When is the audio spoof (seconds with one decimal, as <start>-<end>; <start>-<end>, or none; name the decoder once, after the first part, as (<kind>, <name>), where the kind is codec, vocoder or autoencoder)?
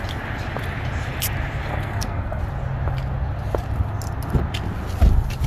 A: 1.7-2.4 (codec, SNAC)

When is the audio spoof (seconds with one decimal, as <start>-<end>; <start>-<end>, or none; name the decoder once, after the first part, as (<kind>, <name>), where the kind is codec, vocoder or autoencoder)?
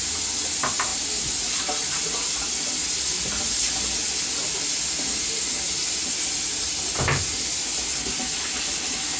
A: none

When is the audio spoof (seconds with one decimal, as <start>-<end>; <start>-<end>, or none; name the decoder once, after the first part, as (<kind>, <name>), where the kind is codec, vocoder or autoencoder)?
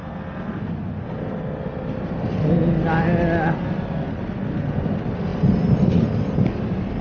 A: none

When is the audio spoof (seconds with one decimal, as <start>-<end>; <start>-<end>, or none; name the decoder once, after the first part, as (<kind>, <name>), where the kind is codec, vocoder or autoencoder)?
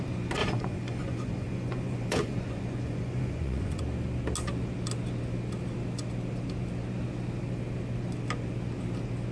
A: 0.4-3.8 (vocoder, Vocos)